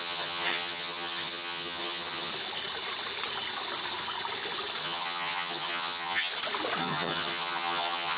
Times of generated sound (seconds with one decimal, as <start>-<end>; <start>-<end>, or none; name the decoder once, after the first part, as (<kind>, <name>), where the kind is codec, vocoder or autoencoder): 0.0-2.3 (vocoder, HiFi-GAN); 4.8-6.3; 6.8-8.2